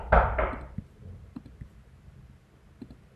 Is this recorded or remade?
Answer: recorded